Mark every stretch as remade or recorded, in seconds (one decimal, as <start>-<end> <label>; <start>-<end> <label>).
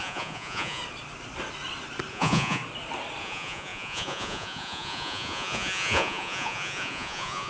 0.0-0.8 remade; 0.8-2.1 recorded; 2.1-2.6 remade; 2.6-3.2 recorded; 3.2-7.5 remade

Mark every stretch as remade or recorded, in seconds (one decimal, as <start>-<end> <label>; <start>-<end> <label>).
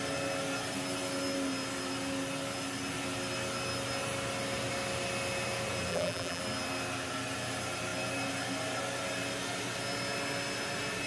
0.0-5.9 recorded; 5.9-6.4 remade; 6.4-11.1 recorded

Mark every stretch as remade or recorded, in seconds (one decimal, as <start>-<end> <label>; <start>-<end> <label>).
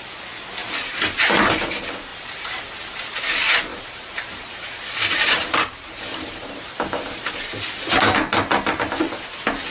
0.0-2.1 recorded; 2.1-3.2 remade; 3.2-3.7 recorded; 3.7-7.4 remade; 7.4-9.7 recorded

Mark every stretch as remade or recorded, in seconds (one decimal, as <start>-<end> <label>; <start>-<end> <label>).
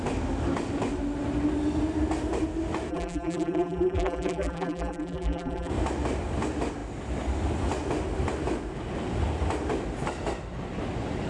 0.0-2.9 recorded; 2.9-5.7 remade; 5.7-11.3 recorded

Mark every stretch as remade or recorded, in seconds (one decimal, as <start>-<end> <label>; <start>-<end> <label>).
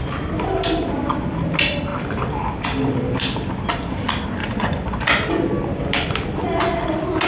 0.0-4.4 recorded; 4.4-5.0 remade; 5.0-7.3 recorded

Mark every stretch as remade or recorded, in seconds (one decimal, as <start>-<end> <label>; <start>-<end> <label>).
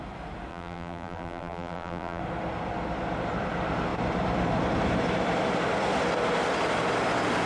0.0-0.5 recorded; 0.5-2.2 remade; 2.2-7.5 recorded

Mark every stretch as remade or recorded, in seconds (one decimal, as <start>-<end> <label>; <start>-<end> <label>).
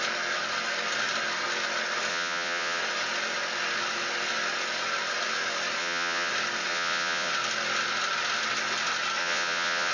0.0-2.1 recorded; 2.1-2.8 remade; 2.8-5.8 recorded; 5.8-6.3 remade; 6.3-6.7 recorded; 6.7-7.3 remade; 7.3-9.2 recorded; 9.2-9.9 remade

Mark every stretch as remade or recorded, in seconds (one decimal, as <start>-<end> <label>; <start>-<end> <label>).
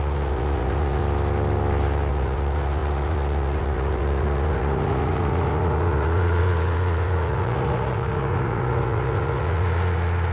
0.0-1.0 remade; 1.0-2.1 recorded; 2.1-10.3 remade